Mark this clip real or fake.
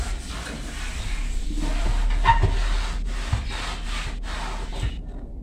real